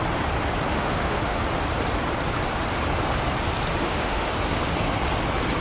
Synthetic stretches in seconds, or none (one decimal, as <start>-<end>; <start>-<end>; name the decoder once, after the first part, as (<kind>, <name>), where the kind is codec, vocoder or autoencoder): 0.7-1.4 (autoencoder, DAC-VAE); 3.8-4.3